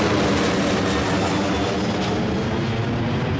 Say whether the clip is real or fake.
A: real